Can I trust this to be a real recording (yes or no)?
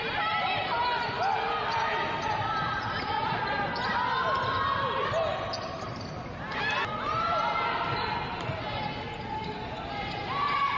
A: yes